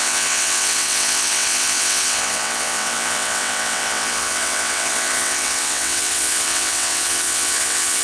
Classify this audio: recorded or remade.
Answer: remade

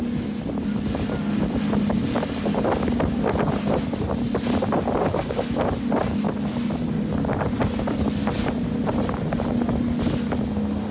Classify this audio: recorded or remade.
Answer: recorded